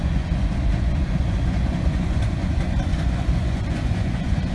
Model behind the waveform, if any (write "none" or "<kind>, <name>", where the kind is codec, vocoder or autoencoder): vocoder, Vocos